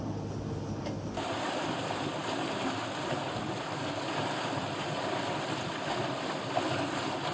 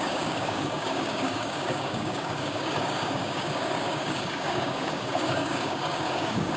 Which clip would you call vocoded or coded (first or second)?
second